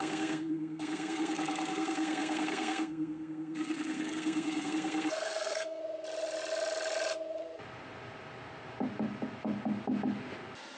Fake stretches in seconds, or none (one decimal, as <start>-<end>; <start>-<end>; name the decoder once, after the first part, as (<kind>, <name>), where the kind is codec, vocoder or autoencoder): 0.0-5.8 (codec, SNAC)